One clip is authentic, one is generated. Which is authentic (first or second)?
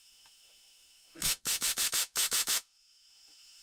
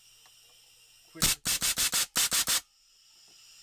second